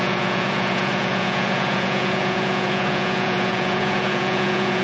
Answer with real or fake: fake